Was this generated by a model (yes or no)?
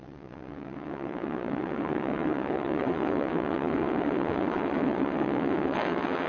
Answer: yes